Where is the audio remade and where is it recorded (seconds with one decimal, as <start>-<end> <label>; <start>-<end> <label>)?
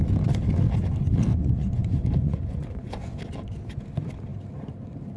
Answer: 0.0-1.3 recorded; 1.3-3.2 remade; 3.2-5.2 recorded